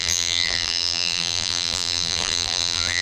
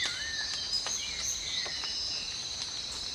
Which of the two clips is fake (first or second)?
first